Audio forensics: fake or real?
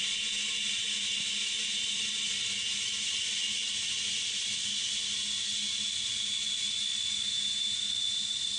real